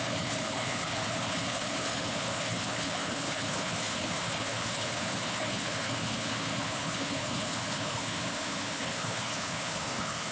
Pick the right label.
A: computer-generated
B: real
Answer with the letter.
A